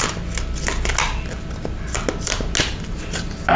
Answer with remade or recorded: recorded